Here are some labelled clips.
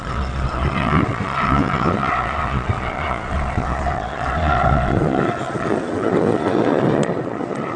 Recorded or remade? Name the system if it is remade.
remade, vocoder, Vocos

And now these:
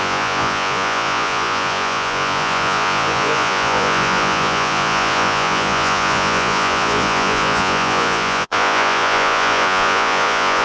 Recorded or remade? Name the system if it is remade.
remade, vocoder, Vocos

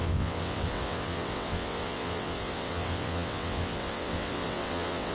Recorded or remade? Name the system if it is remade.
remade, vocoder, WaveNeXt